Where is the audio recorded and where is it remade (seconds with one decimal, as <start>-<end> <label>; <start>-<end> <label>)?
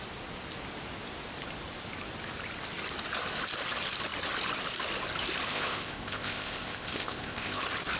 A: 0.0-5.5 recorded; 5.5-7.6 remade; 7.6-8.0 recorded